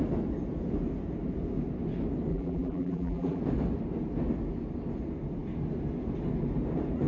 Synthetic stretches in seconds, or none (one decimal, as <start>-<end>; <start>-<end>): 2.3-3.4